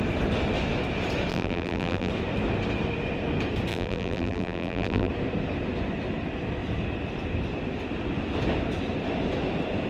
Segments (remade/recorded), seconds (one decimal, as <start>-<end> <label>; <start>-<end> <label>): 0.0-1.3 recorded; 1.3-2.1 remade; 2.1-3.7 recorded; 3.7-5.1 remade; 5.1-9.9 recorded